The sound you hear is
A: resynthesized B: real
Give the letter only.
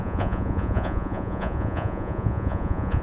A